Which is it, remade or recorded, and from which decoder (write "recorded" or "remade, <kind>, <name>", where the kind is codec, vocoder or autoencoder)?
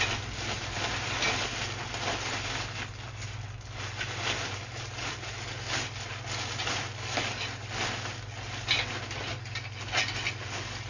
recorded